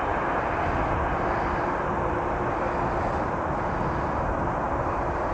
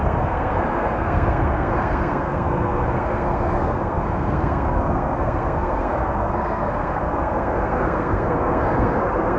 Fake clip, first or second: second